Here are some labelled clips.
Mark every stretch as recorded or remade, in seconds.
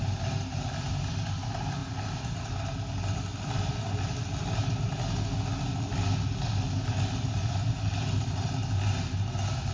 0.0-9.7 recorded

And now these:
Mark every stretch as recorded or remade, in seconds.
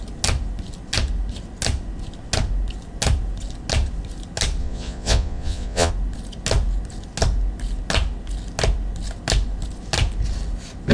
0.0-4.6 recorded; 4.6-5.9 remade; 5.9-10.9 recorded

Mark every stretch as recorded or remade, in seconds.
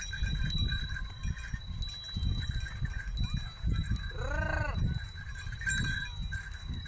0.0-6.9 recorded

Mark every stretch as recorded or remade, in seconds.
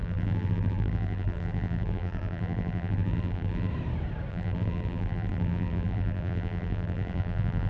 0.0-3.7 remade; 3.7-4.3 recorded; 4.3-7.7 remade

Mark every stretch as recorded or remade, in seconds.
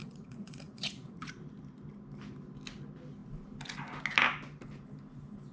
0.0-1.3 remade; 1.3-5.5 recorded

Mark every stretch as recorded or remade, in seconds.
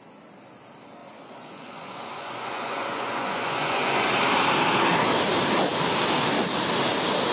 0.0-1.0 recorded; 1.0-4.1 remade; 4.1-7.3 recorded